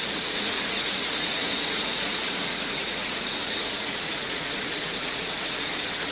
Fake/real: fake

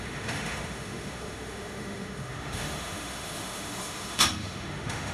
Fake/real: fake